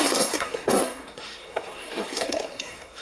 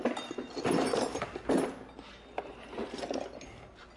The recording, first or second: second